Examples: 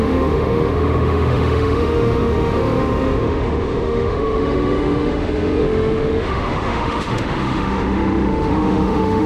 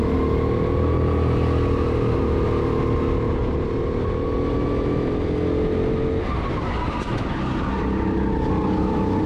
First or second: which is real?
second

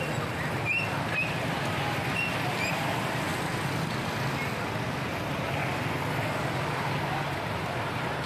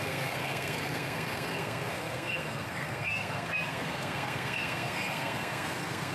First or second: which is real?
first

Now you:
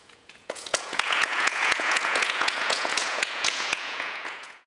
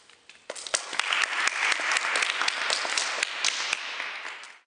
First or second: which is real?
second